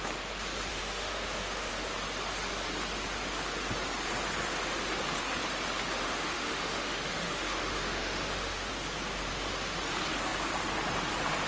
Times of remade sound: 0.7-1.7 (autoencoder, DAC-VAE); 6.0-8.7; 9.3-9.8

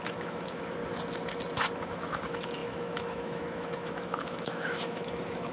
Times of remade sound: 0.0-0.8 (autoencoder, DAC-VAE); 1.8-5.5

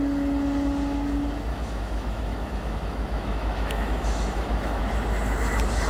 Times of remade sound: 1.5-4.8 (autoencoder, DAC-VAE)